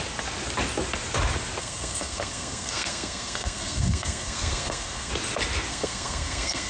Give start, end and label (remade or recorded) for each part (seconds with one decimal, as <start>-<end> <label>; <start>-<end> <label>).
0.0-1.6 recorded; 1.6-5.1 remade; 5.1-5.7 recorded; 5.7-6.7 remade